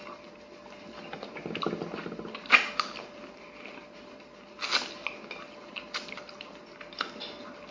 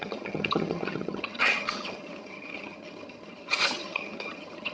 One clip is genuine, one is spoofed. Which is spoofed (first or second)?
second